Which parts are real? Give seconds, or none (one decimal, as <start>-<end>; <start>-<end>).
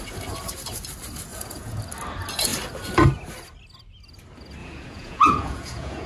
0.0-1.3; 1.8-4.6